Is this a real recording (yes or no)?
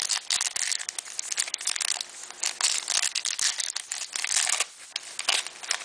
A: yes